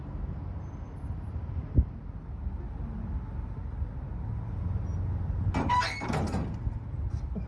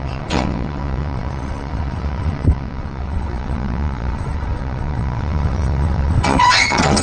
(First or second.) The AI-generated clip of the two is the second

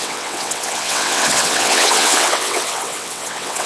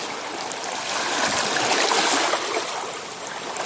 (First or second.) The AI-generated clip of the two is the first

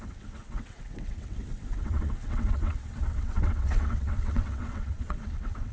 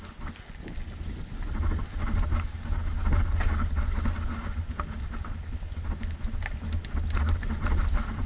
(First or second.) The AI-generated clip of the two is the first